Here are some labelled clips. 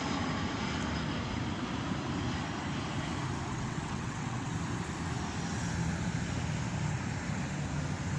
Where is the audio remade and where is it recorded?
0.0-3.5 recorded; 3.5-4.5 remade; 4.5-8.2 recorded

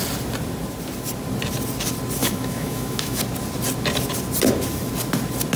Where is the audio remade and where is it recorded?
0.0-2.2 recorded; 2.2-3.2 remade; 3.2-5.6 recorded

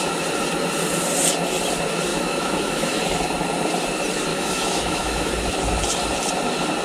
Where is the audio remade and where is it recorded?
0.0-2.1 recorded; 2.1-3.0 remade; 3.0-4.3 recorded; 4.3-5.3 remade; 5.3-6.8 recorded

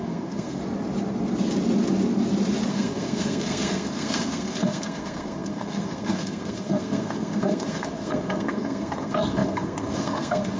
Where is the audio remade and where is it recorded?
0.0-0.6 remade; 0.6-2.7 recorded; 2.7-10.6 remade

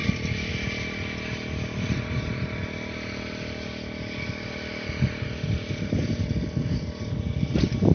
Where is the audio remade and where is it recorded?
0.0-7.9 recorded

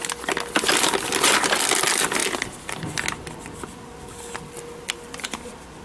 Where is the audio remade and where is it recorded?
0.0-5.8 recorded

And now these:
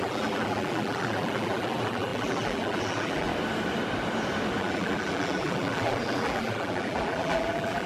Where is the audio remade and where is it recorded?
0.0-3.3 remade; 3.3-4.6 recorded; 4.6-7.9 remade

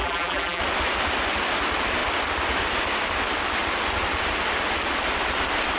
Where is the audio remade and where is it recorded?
0.0-0.6 remade; 0.6-5.8 recorded